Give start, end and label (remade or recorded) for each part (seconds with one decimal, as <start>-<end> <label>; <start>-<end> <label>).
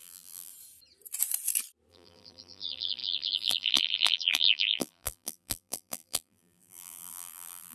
0.0-0.5 remade; 0.5-1.9 recorded; 1.9-7.7 remade